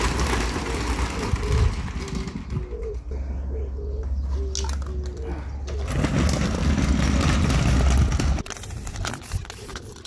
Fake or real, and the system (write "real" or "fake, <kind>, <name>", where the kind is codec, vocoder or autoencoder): real